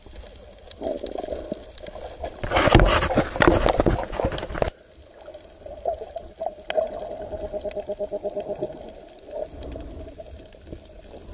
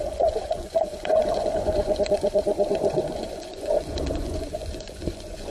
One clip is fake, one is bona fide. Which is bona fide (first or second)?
first